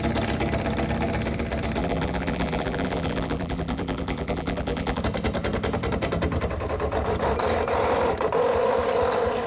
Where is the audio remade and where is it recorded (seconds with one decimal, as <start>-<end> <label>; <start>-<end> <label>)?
0.0-1.8 recorded; 1.8-5.0 remade; 5.0-9.5 recorded